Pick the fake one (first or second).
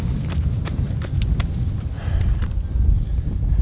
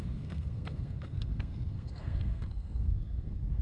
second